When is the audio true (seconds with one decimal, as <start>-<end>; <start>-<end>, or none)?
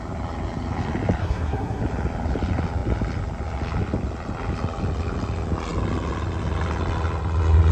0.0-1.2; 1.8-7.7